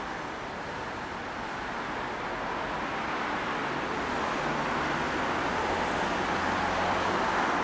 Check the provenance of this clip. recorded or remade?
recorded